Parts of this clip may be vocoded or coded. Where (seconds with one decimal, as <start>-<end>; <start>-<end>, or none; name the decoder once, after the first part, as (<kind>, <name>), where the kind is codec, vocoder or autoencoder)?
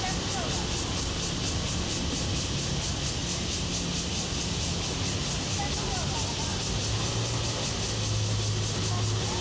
none